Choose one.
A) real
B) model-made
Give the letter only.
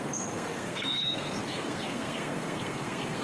B